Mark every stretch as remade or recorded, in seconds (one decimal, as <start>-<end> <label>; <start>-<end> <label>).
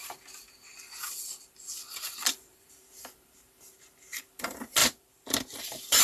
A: 0.0-0.6 recorded; 0.6-4.2 remade; 4.2-4.8 recorded; 4.8-6.0 remade